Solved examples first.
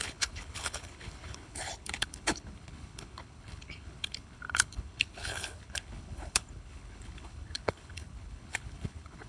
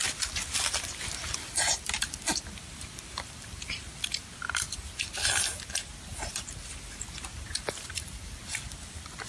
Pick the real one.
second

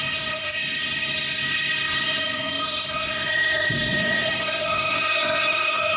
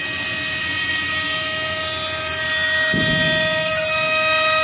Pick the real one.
second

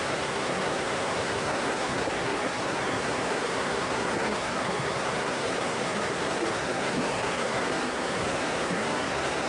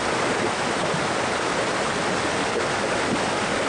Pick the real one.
second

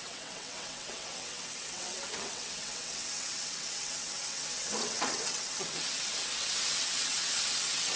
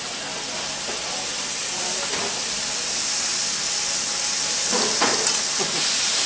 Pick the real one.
second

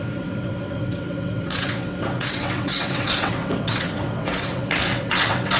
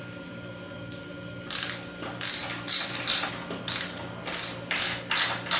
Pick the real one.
second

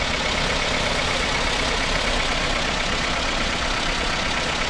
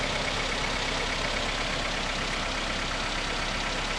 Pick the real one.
second